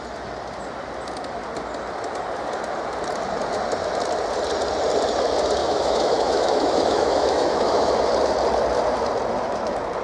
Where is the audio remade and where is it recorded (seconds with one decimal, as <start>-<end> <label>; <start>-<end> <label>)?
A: 0.0-5.6 recorded; 5.6-7.9 remade; 7.9-10.0 recorded